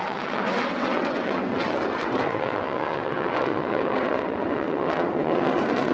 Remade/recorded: remade